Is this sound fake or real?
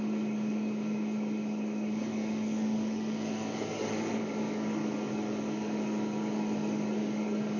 fake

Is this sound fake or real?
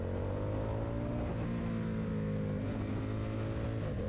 real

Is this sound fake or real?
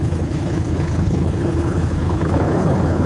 fake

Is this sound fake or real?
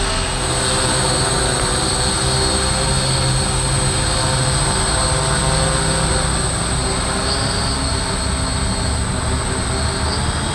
real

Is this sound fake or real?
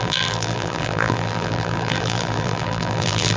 fake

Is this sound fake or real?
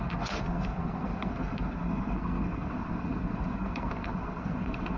fake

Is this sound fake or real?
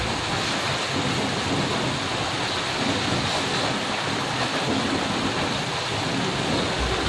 real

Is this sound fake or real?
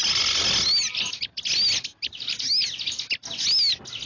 real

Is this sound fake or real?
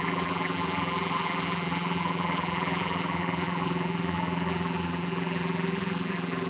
fake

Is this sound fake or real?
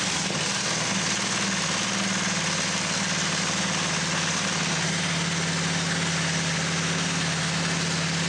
real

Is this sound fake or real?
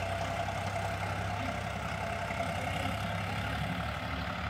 real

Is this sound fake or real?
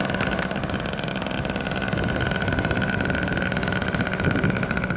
real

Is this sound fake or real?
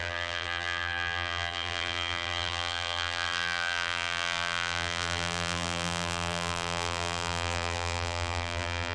fake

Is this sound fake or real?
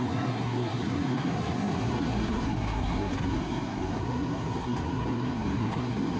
fake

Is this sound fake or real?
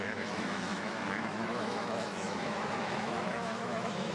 fake